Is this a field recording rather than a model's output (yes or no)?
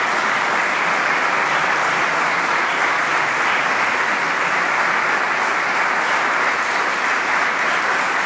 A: yes